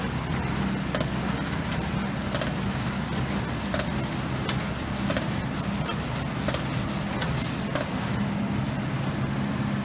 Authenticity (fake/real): real